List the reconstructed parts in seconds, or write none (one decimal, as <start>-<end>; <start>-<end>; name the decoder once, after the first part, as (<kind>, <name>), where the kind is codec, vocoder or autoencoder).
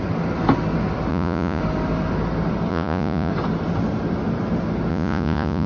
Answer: 1.1-1.6 (vocoder, Vocos); 2.7-3.3; 4.9-5.7